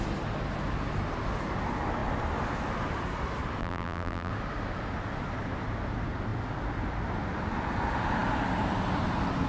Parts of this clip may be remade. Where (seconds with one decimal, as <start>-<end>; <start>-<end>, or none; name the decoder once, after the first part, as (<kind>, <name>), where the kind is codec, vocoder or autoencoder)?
3.6-4.3 (vocoder, BigVGAN v2)